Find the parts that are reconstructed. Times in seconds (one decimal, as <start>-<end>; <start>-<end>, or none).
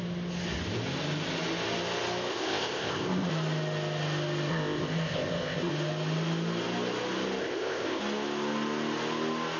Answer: 2.3-3.3; 4.5-5.7; 7.4-8.0